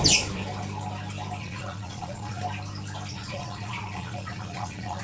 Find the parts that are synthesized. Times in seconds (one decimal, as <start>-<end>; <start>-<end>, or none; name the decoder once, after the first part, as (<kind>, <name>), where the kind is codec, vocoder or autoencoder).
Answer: 1.4-2.4 (vocoder, Vocos); 3.1-5.0